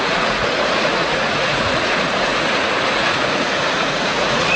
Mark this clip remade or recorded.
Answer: remade